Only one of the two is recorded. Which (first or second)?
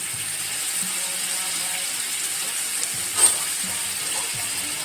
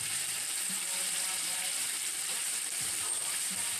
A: first